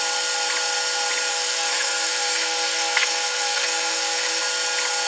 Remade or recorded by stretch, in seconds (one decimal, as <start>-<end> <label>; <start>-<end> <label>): 0.0-1.3 recorded; 1.3-4.4 remade; 4.4-5.1 recorded